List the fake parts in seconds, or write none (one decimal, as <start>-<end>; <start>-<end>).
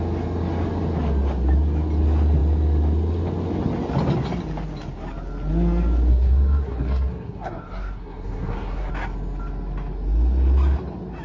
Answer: 6.1-8.9